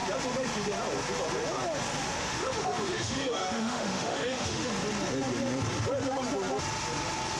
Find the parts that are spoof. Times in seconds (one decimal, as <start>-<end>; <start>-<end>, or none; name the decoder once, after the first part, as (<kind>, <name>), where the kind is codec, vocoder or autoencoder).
2.1-4.7 (autoencoder, DAC-VAE)